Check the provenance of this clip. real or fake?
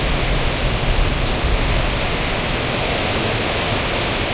real